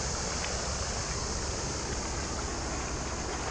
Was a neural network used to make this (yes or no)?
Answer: no